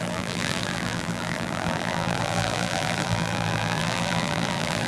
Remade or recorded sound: remade